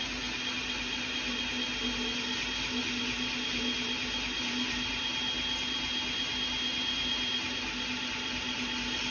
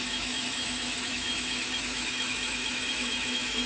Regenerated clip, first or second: second